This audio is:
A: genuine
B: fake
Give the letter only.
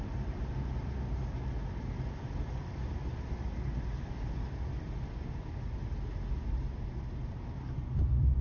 A